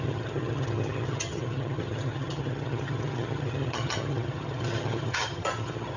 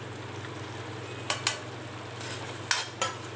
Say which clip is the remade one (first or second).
first